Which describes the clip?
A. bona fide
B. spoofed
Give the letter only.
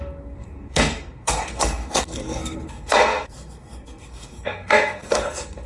B